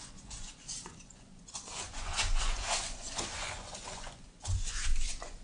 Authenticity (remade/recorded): remade